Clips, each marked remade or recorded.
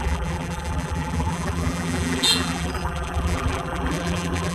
remade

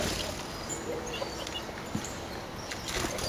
recorded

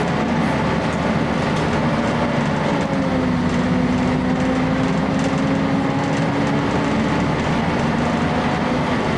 recorded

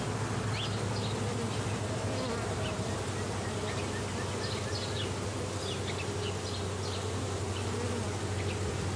recorded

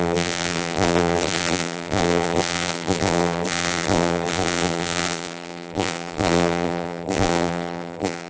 remade